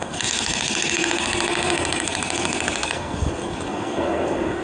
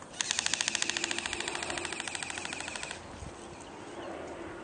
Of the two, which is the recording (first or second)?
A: second